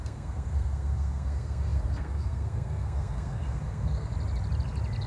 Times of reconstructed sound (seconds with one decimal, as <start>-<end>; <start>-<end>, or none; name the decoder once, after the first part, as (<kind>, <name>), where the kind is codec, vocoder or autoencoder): 0.0-4.1 (codec, SNAC)

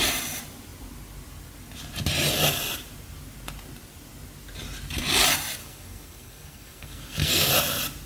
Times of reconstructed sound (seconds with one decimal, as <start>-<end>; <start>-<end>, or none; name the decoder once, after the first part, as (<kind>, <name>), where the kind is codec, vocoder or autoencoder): 5.6-7.5 (codec, SNAC)

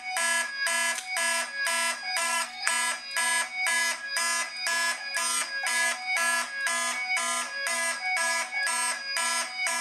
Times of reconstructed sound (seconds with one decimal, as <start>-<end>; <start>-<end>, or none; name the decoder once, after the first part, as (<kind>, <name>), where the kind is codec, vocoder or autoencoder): 2.2-2.7 (codec, SNAC)

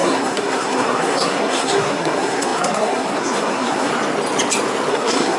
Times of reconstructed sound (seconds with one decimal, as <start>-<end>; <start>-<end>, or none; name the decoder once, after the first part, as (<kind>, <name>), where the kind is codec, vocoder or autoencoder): 0.0-3.9 (codec, SNAC); 4.9-5.4

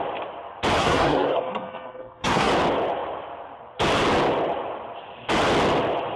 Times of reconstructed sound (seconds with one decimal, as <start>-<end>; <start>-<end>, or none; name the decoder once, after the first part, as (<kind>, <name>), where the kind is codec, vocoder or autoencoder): 0.8-2.5 (codec, SNAC)

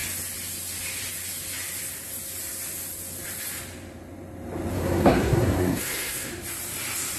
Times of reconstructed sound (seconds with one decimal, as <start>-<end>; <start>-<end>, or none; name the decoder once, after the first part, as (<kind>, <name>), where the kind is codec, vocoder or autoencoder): 4.7-6.3 (codec, SNAC)